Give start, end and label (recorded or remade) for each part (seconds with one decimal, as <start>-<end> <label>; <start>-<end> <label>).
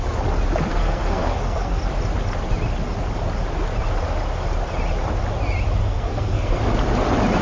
0.0-0.7 recorded; 0.7-1.8 remade; 1.8-5.8 recorded; 5.8-6.6 remade; 6.6-7.4 recorded